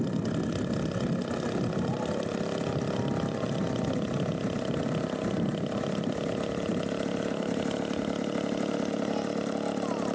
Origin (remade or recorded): recorded